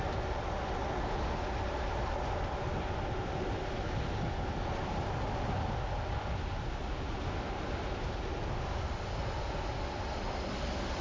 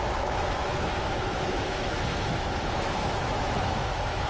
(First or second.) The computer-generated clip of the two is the second